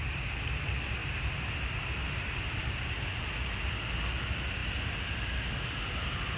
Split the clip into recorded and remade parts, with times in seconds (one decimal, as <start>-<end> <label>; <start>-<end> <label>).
0.0-6.4 recorded